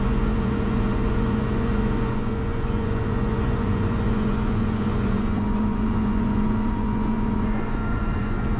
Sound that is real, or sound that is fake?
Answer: fake